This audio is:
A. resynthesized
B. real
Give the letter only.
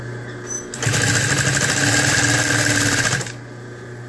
B